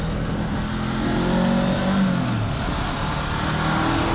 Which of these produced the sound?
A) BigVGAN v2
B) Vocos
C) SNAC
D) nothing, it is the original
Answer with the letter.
D